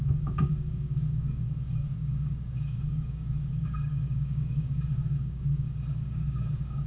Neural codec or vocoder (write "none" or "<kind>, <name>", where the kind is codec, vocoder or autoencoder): codec, DAC